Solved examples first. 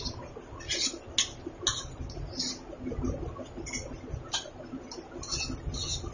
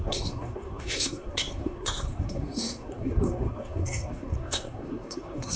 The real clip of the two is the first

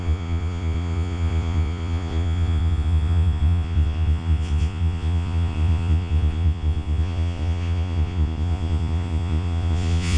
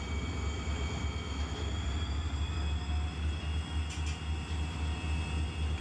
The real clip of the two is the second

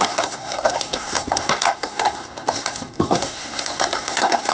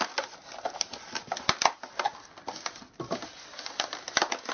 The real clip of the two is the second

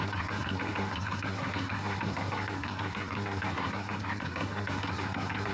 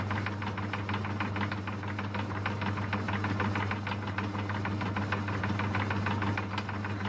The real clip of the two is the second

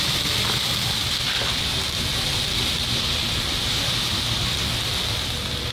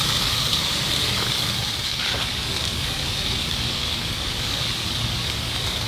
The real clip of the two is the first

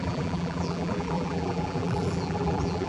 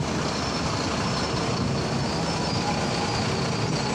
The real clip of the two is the second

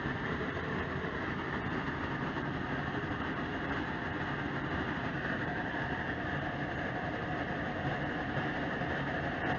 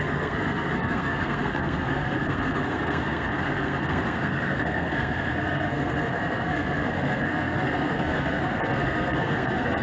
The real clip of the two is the first